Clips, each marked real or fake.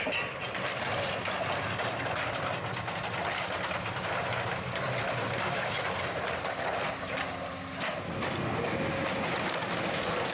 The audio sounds real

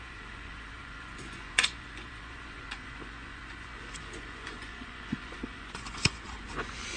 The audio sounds fake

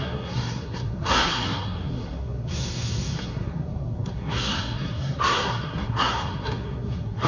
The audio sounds fake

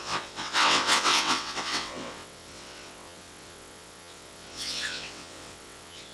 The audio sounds fake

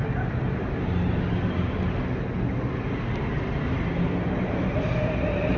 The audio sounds real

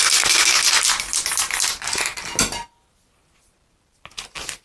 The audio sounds real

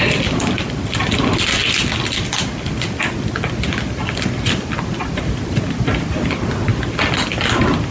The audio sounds real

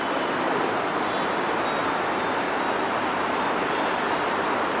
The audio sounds real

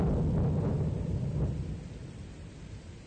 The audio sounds real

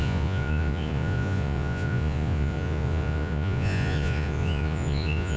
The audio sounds fake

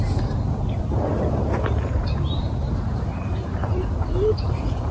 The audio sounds fake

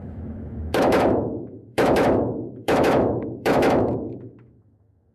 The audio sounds fake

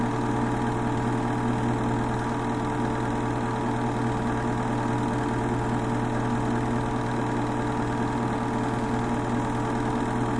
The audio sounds real